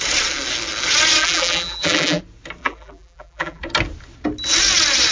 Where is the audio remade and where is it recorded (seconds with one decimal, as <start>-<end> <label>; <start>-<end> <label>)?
0.0-1.2 recorded; 1.2-2.2 remade; 2.2-2.6 recorded; 2.6-3.6 remade; 3.6-5.1 recorded